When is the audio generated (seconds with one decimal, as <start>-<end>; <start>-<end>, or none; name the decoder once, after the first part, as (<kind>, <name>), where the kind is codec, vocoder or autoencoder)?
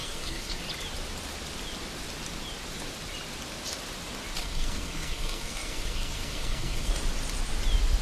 0.0-0.6 (codec, SNAC); 4.4-6.9